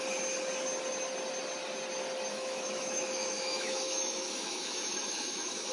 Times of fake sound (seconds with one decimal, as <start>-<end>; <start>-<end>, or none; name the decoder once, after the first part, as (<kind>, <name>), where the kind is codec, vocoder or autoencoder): 2.3-5.7 (autoencoder, DAC-VAE)